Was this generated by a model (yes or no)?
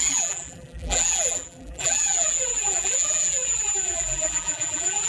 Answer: yes